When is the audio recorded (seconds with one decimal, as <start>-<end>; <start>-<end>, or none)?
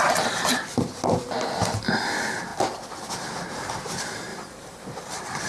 0.0-4.3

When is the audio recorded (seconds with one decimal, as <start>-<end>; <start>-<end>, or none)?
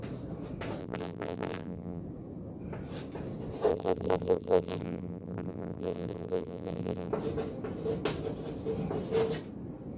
0.0-0.8; 2.0-3.7; 7.1-10.0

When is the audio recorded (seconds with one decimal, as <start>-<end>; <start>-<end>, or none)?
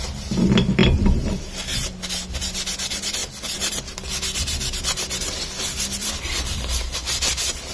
0.0-0.8; 1.4-3.2; 4.8-6.0; 6.8-7.7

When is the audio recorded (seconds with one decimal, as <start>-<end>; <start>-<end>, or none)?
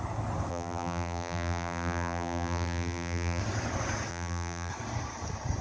0.0-0.5; 3.4-4.1; 4.7-5.6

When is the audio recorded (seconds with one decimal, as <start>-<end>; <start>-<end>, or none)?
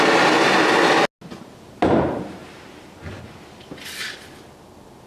0.0-1.8; 3.4-5.1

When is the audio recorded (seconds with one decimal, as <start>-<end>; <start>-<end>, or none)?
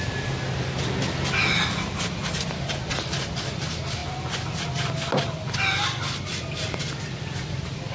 0.0-2.2; 2.9-6.3; 6.8-7.9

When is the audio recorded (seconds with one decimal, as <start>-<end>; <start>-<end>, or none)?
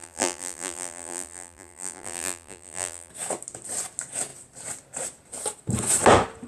3.1-6.5